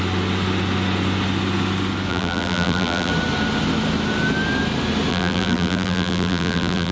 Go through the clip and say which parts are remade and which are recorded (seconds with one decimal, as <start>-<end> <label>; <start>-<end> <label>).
0.0-2.1 recorded; 2.1-3.1 remade; 3.1-5.1 recorded; 5.1-6.9 remade